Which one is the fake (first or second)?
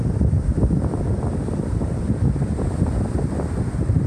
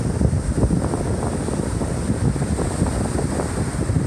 first